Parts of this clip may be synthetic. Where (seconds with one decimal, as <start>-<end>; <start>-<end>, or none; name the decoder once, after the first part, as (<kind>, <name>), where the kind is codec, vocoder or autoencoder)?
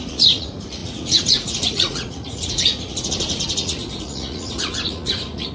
0.0-5.5 (vocoder, Vocos)